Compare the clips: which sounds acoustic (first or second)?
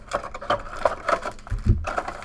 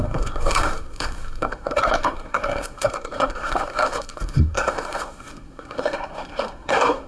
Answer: first